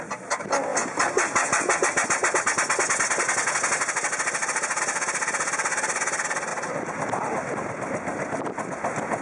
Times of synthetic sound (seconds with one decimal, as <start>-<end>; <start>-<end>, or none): none